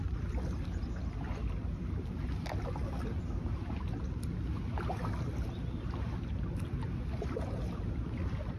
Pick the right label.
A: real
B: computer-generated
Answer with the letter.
A